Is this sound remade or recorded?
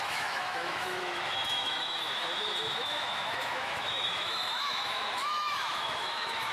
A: remade